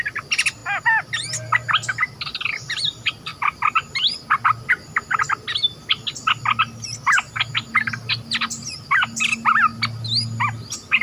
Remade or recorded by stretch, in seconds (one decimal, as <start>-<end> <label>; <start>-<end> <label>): 0.0-0.6 remade; 0.6-2.3 recorded; 2.3-3.3 remade; 3.3-7.3 recorded; 7.3-9.7 remade; 9.7-11.0 recorded